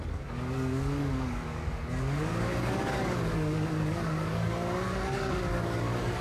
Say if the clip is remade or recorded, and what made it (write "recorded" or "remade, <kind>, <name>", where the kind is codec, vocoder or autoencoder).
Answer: remade, codec, DAC